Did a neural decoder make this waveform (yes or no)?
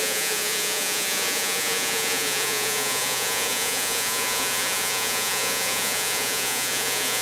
yes